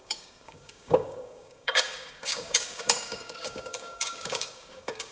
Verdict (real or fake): fake